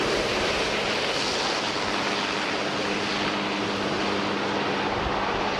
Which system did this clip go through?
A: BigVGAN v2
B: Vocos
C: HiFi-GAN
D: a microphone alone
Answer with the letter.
D